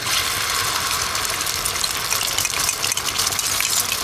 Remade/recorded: recorded